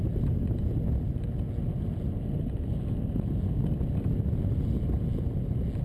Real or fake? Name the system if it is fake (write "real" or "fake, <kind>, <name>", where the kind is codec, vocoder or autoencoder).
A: real